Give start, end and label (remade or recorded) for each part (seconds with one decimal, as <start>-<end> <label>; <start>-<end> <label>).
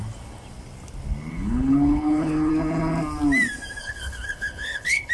0.0-1.3 recorded; 1.3-2.5 remade; 2.5-3.8 recorded; 3.8-5.1 remade